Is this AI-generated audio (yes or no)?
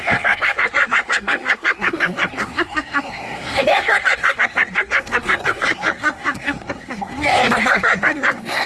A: yes